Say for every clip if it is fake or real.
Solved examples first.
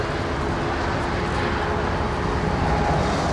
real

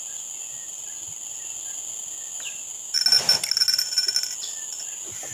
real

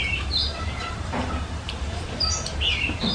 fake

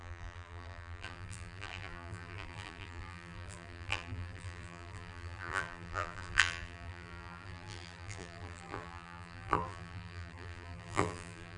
fake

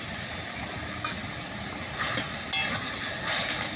real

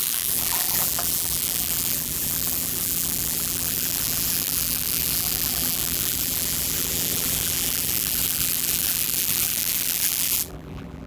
fake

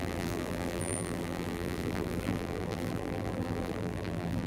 fake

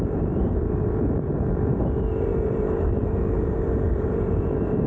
fake